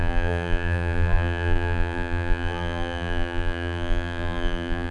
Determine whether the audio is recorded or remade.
remade